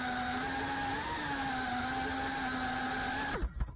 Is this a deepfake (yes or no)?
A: no